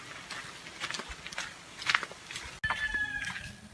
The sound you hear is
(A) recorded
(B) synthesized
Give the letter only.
A